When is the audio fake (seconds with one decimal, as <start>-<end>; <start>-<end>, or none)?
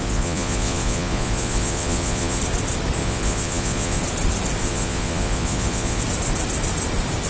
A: 0.0-2.4; 3.0-4.0; 4.6-6.0